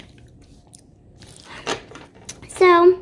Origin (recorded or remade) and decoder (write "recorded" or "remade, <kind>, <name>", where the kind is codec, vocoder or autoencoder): recorded